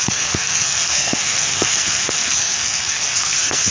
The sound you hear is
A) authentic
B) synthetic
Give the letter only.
B